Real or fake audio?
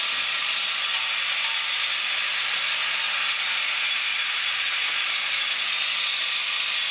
real